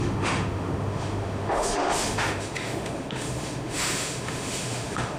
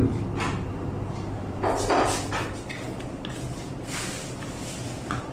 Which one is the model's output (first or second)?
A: first